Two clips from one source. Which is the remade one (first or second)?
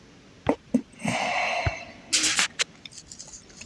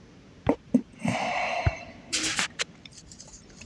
second